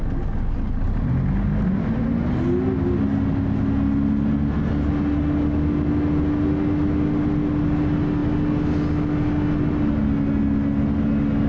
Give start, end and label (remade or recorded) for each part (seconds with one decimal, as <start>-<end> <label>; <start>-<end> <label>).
0.0-11.5 recorded